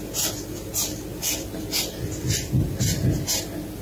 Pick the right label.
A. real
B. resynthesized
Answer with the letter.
A